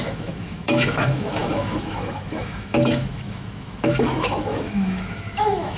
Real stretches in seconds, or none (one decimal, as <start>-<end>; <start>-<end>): none